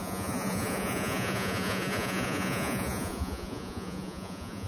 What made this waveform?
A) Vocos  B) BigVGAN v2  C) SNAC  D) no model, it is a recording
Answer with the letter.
A